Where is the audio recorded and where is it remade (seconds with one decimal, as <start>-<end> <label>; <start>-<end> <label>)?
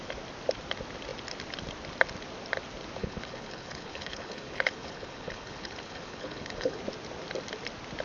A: 0.0-3.0 recorded; 3.0-6.8 remade; 6.8-8.0 recorded